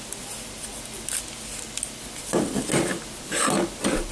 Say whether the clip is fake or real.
real